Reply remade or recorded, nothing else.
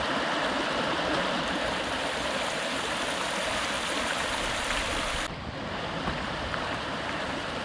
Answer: recorded